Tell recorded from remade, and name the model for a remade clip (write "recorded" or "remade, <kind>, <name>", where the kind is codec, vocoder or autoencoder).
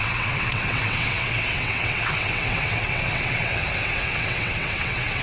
remade, vocoder, WaveNeXt